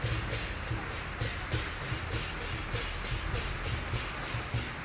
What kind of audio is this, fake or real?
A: real